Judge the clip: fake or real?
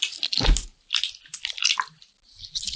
real